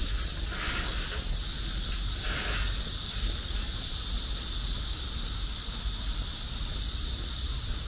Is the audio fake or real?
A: real